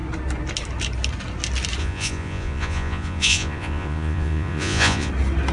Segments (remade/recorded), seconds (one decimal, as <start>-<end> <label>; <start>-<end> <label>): 0.0-1.8 recorded; 1.8-5.1 remade; 5.1-5.5 recorded

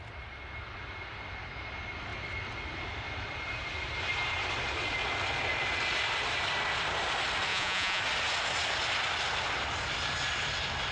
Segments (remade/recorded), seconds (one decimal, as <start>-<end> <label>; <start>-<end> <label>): 0.0-7.5 recorded; 7.5-8.0 remade; 8.0-10.9 recorded

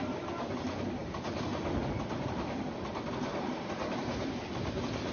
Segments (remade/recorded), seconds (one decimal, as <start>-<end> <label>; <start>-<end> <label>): 0.0-5.1 recorded

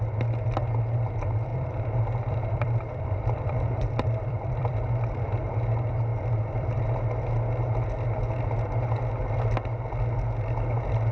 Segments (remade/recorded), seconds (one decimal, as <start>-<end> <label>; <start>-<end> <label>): 0.0-1.5 recorded; 1.5-4.9 remade; 4.9-6.1 recorded; 6.1-6.7 remade; 6.7-11.1 recorded

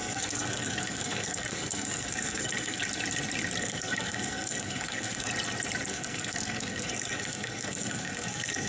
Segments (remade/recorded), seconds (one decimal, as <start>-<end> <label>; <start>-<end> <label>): 0.0-2.8 remade; 2.8-3.6 recorded; 3.6-5.3 remade; 5.3-5.9 recorded; 5.9-8.7 remade

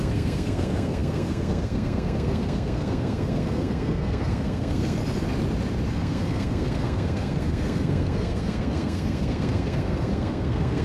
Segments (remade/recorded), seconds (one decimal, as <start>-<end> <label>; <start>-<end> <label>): 0.0-5.0 remade; 5.0-5.9 recorded; 5.9-10.8 remade